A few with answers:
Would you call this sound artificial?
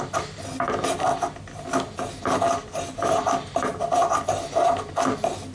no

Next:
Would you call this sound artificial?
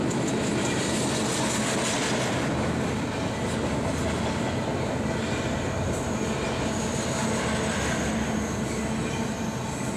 no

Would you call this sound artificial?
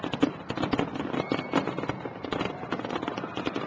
no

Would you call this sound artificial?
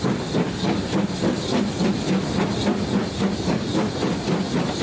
no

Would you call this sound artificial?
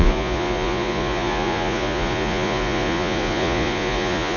yes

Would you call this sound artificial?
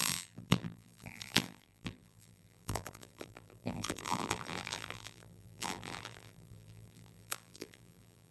yes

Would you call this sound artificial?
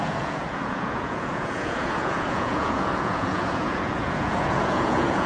yes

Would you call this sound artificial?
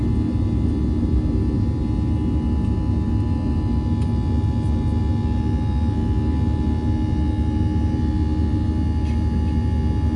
no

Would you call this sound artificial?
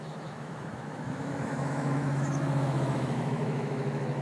yes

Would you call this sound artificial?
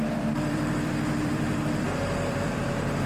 yes